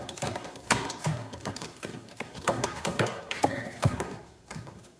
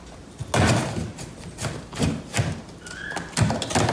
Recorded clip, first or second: second